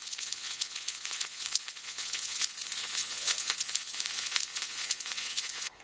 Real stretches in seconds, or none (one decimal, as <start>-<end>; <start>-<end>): none

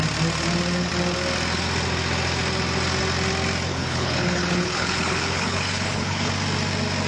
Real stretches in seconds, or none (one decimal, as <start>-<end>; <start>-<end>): 0.0-3.7; 6.3-7.1